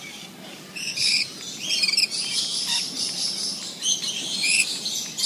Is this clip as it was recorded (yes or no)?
yes